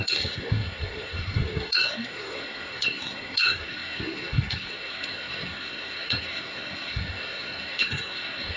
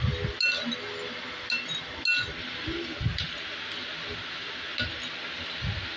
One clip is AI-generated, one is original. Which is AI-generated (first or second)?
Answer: first